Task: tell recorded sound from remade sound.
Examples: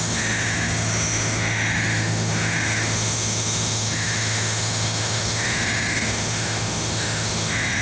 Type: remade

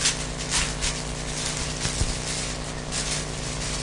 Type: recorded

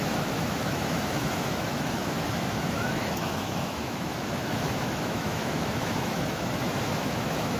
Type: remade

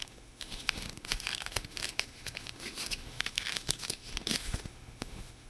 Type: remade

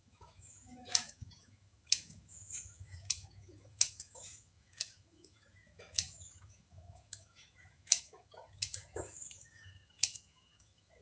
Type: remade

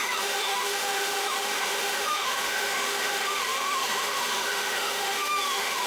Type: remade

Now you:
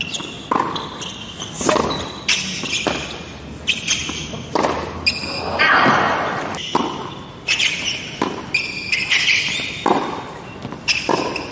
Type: recorded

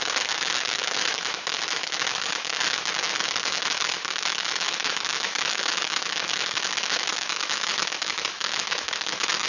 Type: remade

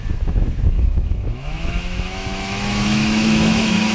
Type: remade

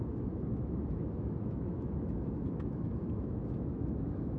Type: remade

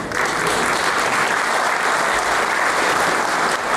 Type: recorded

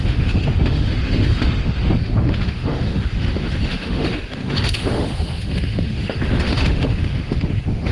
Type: remade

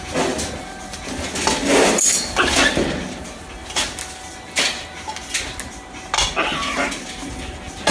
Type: recorded